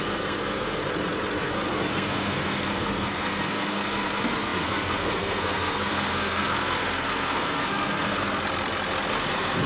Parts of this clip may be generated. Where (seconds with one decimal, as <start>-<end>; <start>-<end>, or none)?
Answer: 0.0-0.8; 1.4-8.4; 9.1-9.7